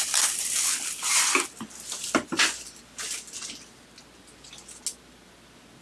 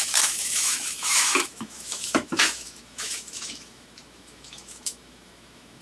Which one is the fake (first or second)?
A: second